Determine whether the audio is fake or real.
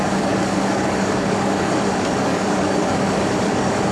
fake